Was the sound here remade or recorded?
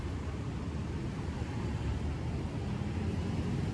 recorded